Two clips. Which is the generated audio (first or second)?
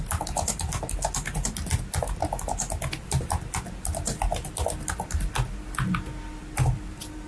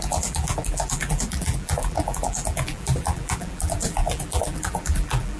second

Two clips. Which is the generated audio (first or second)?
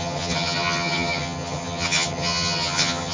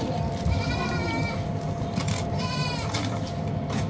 first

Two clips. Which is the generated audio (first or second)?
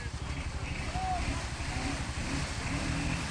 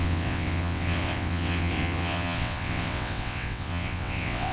second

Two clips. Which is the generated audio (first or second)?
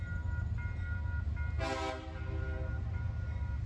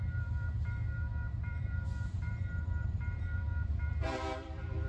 second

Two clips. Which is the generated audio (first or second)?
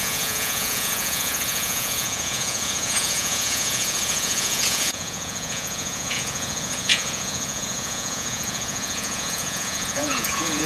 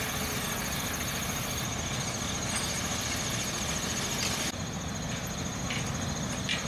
first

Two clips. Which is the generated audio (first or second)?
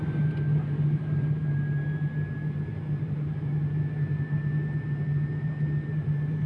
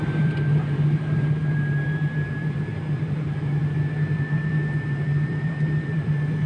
second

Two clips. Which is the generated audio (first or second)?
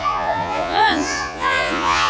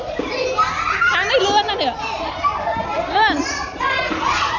first